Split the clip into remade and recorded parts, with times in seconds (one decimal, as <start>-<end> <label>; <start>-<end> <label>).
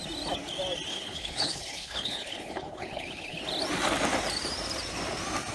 0.0-0.9 recorded; 0.9-3.4 remade; 3.4-5.5 recorded